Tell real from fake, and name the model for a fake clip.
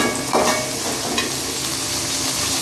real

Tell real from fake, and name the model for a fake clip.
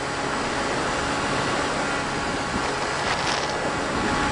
real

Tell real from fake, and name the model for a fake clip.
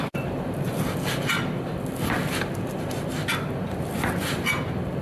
real